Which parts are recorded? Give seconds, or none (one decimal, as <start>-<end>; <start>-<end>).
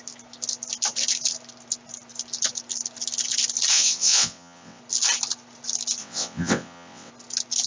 0.0-3.7; 4.8-6.0; 7.1-7.7